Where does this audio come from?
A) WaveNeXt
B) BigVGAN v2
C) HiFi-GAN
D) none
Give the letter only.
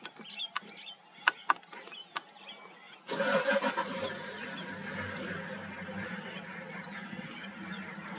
D